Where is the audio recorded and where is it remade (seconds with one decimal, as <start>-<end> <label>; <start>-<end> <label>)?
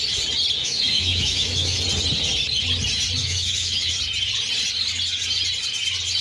0.0-0.6 recorded; 0.6-1.8 remade; 1.8-3.2 recorded; 3.2-3.9 remade; 3.9-6.2 recorded